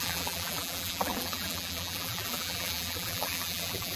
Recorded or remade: remade